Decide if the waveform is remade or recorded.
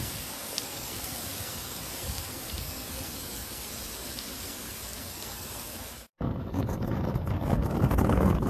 remade